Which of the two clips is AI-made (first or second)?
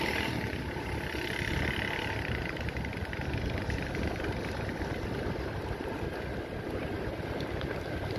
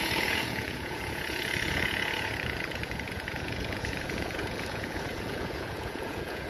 second